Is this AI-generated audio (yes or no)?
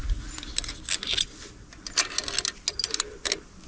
no